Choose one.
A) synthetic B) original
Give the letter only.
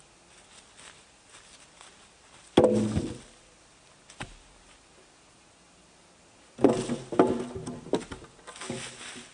B